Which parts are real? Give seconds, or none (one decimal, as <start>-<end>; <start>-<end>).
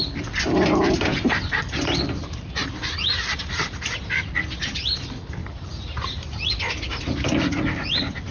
0.0-5.4; 6.5-8.3